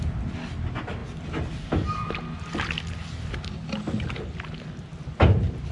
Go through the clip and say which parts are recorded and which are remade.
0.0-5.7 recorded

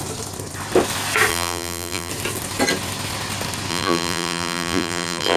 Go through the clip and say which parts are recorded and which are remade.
0.0-1.3 recorded; 1.3-2.1 remade; 2.1-3.7 recorded; 3.7-5.4 remade